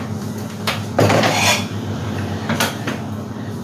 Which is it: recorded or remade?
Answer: remade